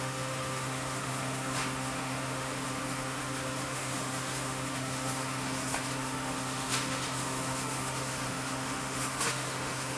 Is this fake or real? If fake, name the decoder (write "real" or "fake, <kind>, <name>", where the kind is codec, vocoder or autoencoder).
fake, autoencoder, DAC-VAE